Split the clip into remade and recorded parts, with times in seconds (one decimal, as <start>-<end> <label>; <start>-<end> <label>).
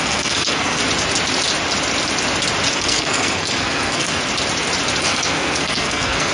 0.0-0.8 remade; 0.8-2.7 recorded; 2.7-4.2 remade; 4.2-5.0 recorded; 5.0-6.3 remade